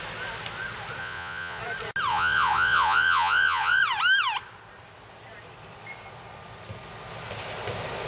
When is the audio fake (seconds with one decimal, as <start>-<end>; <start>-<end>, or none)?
1.0-1.6; 2.1-3.8